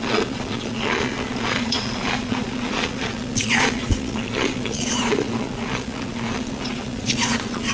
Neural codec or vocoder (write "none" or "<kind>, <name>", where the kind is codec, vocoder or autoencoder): vocoder, Vocos